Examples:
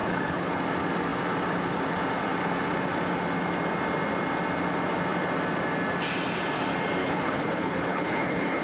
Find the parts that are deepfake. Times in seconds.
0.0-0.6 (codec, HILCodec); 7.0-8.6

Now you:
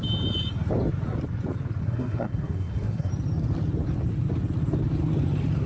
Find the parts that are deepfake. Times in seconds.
1.8-3.1 (codec, SNAC)

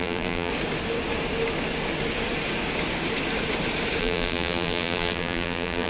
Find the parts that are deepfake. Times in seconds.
0.0-0.5 (vocoder, BigVGAN v2); 4.0-5.9

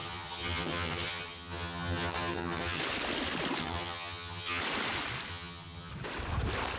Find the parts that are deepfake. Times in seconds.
0.0-2.8 (vocoder, HiFi-GAN); 3.6-4.6; 5.3-5.9

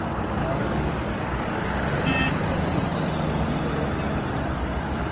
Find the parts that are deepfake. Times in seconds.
0.4-1.7 (codec, DAC)

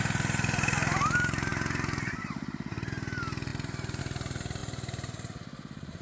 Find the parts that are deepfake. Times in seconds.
0.0-6.0 (vocoder, BigVGAN v2)

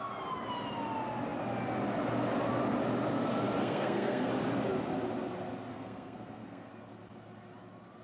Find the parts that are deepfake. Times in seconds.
3.6-4.3 (codec, SNAC); 5.7-6.7